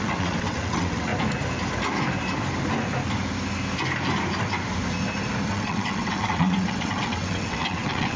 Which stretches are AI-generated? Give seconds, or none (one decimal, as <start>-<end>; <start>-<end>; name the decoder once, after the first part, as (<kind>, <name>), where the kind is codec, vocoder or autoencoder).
0.0-1.1 (vocoder, WaveNeXt); 5.5-8.2